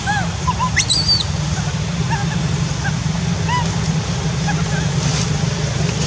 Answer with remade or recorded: recorded